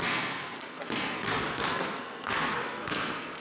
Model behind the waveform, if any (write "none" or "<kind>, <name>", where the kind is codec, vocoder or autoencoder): codec, SNAC